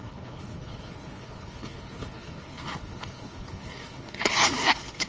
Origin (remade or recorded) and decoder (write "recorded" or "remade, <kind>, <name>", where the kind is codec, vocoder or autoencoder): remade, codec, HILCodec